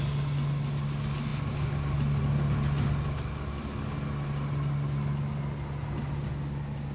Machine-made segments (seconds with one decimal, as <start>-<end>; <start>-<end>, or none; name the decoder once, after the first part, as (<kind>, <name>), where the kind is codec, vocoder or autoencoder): none